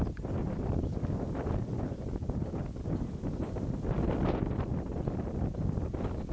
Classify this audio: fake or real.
real